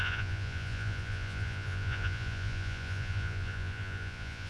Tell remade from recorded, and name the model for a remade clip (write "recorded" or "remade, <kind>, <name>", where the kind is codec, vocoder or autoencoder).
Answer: remade, vocoder, Vocos